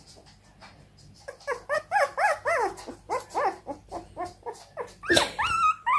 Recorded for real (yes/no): yes